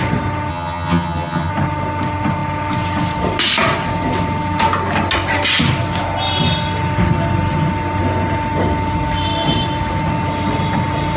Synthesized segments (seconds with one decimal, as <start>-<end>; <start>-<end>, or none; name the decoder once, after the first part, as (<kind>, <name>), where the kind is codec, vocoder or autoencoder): 0.5-1.5 (vocoder, HiFi-GAN)